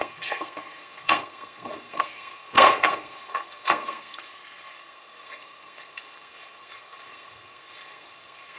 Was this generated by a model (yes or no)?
yes